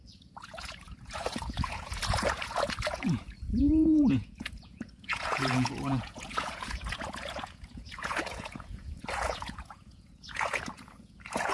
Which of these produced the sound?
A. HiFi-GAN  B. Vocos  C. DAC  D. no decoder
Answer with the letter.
B